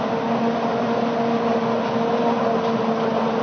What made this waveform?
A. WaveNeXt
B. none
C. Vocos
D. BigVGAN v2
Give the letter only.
B